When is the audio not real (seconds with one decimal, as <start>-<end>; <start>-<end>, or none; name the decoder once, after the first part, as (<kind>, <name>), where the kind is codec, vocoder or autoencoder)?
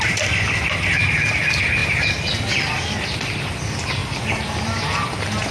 none